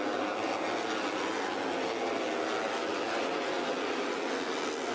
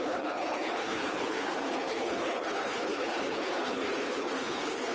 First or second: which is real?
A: first